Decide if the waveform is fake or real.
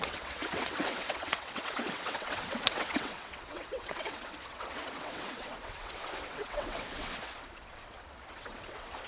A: fake